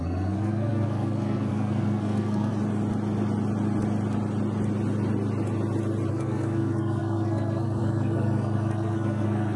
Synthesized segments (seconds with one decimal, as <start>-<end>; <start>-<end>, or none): 0.0-2.5; 6.1-9.6